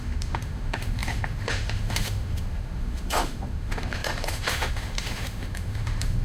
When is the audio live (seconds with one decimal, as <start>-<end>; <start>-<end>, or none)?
none